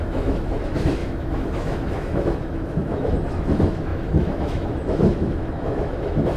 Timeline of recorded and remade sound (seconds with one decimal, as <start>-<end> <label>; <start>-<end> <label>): 0.0-6.4 remade